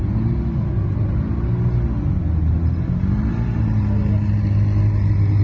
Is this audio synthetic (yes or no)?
no